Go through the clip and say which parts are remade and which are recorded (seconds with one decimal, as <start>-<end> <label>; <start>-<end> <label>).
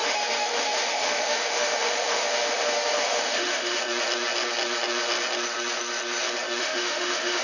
0.0-3.8 remade; 3.8-6.6 recorded; 6.6-7.4 remade